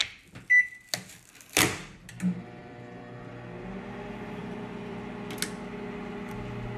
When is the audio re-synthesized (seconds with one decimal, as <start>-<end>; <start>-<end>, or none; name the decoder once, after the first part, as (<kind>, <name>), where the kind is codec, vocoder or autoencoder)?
4.4-5.1 (vocoder, BigVGAN v2)

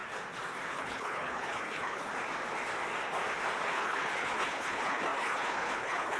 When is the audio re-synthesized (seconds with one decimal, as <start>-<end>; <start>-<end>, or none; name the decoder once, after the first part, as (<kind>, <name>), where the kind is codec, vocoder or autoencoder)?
0.7-2.1 (codec, HILCodec); 3.7-6.2

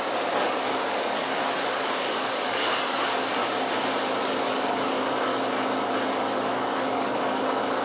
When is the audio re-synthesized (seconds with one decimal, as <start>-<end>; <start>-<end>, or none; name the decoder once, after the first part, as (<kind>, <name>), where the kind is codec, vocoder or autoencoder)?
0.0-3.4 (codec, DAC); 4.2-5.3; 6.1-7.8

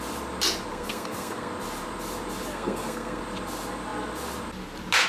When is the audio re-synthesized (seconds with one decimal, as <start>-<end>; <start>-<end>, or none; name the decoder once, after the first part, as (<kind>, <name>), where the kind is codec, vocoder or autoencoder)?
0.7-1.5 (codec, SNAC); 2.5-3.2